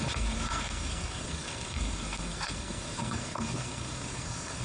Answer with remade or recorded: remade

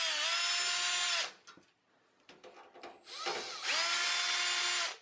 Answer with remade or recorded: recorded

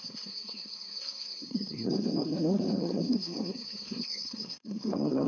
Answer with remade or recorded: remade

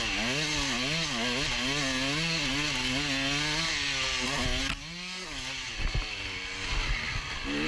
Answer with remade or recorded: recorded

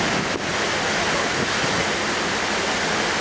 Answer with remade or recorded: recorded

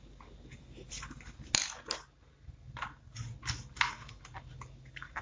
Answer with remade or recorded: recorded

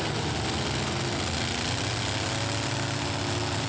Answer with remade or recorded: recorded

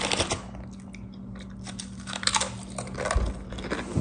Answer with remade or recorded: recorded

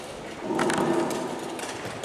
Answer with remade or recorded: recorded